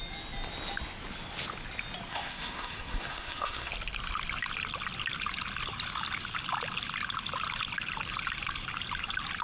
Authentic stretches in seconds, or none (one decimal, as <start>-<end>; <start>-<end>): 0.0-2.1; 3.7-9.4